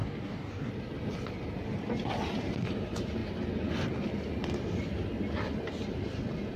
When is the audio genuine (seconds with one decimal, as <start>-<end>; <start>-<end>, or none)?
0.7-6.6